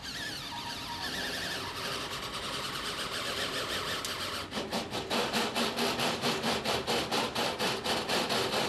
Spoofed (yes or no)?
no